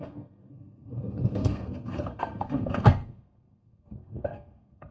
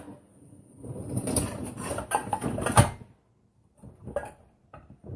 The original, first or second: second